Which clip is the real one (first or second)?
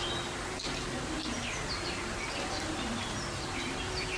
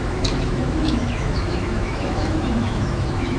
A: first